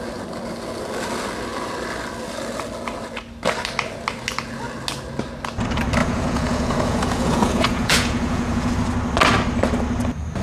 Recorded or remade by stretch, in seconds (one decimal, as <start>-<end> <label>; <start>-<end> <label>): 0.0-6.0 recorded; 6.0-8.7 remade; 8.7-10.4 recorded